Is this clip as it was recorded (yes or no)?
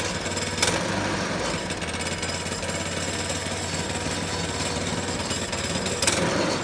yes